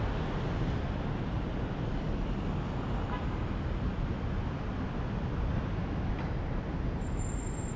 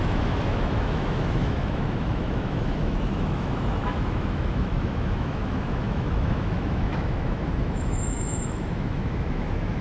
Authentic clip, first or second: first